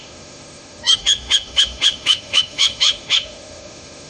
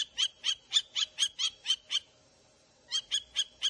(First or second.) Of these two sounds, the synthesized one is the first